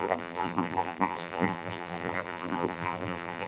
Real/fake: fake